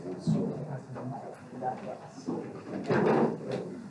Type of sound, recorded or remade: recorded